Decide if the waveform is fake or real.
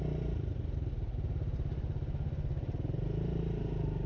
fake